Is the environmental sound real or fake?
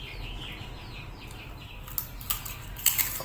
real